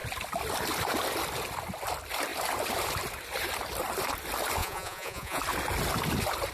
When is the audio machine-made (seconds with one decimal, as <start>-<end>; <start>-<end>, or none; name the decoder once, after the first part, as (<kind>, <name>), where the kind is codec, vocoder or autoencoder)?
4.6-5.4 (vocoder, Vocos)